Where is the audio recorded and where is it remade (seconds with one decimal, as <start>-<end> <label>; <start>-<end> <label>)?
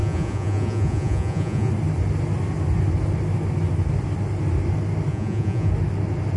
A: 0.0-1.7 remade; 1.7-5.1 recorded; 5.1-5.7 remade; 5.7-6.4 recorded